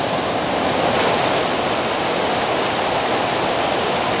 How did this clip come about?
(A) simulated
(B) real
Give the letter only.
B